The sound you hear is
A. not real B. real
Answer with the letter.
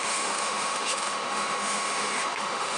A